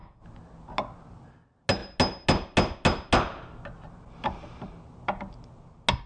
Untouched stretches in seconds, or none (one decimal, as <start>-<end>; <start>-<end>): 0.0-6.1